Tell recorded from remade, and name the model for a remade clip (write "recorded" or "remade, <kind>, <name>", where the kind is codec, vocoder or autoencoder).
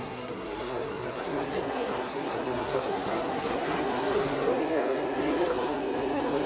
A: remade, codec, SNAC